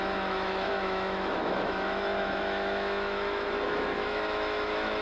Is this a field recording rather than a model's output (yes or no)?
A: no